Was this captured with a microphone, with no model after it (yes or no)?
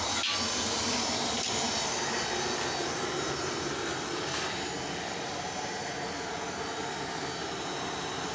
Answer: yes